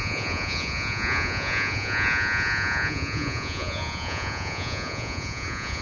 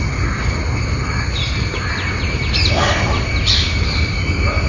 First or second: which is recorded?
second